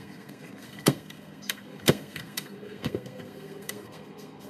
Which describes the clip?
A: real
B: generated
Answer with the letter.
B